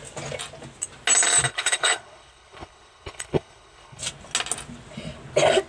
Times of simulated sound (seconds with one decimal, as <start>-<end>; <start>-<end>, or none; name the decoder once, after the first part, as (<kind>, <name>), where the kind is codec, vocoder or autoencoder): 1.5-4.0 (codec, HILCodec)

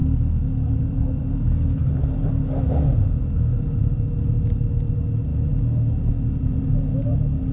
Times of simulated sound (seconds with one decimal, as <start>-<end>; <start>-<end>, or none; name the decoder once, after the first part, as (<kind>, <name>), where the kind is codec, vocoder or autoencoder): none

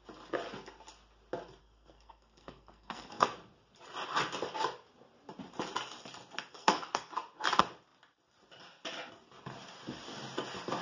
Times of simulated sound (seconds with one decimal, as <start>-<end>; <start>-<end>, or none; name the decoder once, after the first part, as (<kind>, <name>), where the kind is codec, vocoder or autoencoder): 1.6-3.3 (codec, SNAC); 6.5-7.1

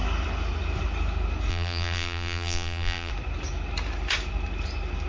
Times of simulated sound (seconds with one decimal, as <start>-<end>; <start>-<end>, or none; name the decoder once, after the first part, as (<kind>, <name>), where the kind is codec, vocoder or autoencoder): 1.5-3.1 (vocoder, BigVGAN v2)

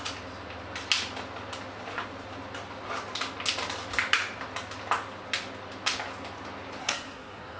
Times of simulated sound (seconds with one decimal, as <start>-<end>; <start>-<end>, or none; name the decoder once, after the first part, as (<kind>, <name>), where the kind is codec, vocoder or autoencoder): 6.8-7.6 (codec, SNAC)

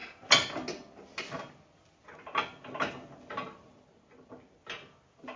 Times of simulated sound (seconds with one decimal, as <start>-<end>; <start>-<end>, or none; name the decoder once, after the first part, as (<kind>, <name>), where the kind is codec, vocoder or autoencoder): none

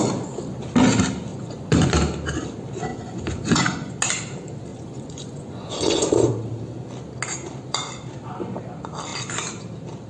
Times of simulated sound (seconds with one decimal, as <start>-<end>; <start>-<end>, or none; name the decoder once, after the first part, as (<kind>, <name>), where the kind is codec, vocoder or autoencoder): 1.3-1.9 (vocoder, Vocos); 2.9-3.9; 4.7-6.3